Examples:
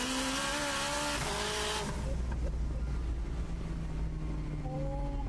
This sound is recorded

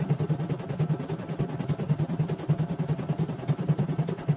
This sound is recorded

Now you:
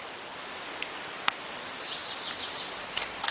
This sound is remade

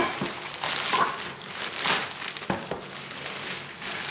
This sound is recorded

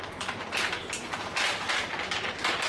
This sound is remade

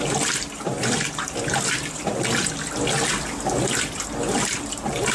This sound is remade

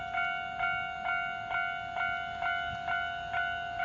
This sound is recorded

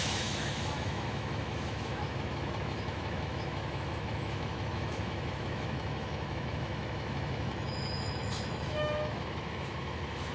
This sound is remade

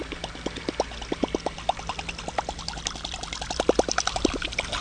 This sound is recorded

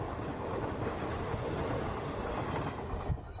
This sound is recorded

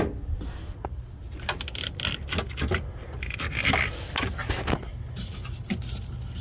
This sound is recorded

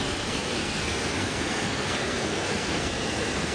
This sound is remade